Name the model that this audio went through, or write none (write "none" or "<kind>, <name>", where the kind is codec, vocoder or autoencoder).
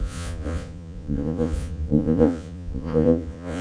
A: vocoder, Vocos